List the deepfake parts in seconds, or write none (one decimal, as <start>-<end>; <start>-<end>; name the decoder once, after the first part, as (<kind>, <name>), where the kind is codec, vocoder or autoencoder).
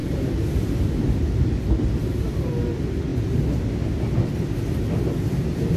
none